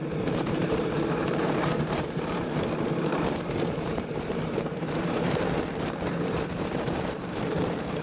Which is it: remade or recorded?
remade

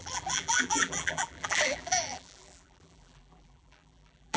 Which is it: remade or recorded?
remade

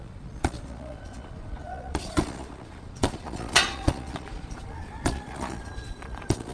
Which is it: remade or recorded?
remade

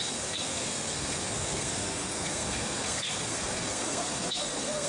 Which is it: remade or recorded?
remade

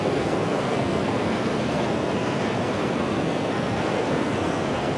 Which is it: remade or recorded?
remade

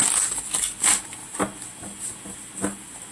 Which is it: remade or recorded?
recorded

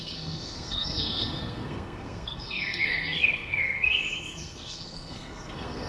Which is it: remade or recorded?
remade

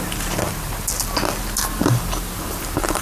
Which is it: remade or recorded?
recorded